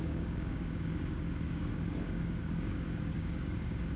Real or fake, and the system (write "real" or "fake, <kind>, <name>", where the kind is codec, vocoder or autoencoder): fake, codec, DAC